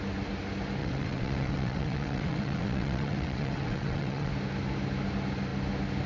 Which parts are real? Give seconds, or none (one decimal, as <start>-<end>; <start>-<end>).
0.0-0.8; 4.3-6.1